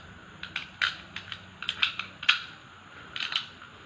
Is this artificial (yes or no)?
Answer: no